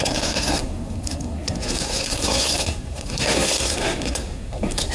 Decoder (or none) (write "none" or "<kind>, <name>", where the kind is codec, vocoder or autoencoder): codec, SNAC